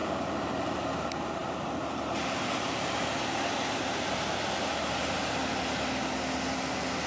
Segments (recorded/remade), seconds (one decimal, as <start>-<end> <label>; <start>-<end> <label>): 0.0-0.8 remade; 0.8-1.4 recorded; 1.4-3.0 remade; 3.0-7.1 recorded